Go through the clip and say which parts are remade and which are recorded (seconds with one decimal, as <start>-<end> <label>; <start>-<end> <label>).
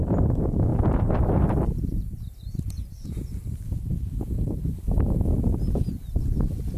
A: 0.0-0.7 recorded; 0.7-4.8 remade; 4.8-6.8 recorded